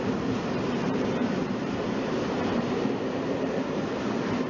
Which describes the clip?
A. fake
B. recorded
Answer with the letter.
A